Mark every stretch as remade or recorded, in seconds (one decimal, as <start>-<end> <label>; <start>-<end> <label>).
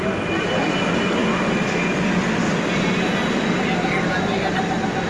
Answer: 0.0-5.1 recorded